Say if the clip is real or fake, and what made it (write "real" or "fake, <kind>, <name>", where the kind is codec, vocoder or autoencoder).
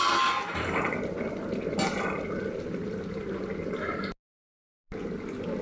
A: real